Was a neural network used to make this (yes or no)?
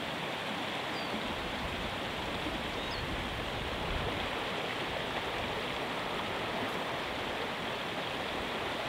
no